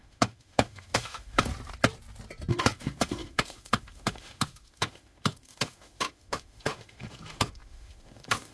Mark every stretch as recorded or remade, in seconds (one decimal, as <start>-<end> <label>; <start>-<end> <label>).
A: 0.0-1.5 remade; 1.5-2.5 recorded; 2.5-8.5 remade